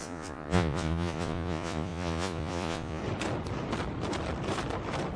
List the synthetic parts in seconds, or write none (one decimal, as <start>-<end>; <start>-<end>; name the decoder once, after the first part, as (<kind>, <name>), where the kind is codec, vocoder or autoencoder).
0.0-3.0 (vocoder, Vocos)